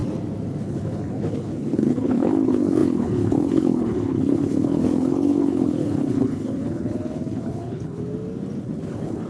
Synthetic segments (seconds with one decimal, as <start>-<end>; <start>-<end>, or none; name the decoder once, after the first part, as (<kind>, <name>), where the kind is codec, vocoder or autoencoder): 0.6-8.0 (codec, HILCodec); 8.6-9.3